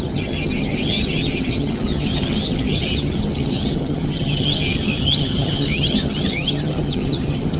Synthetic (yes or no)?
yes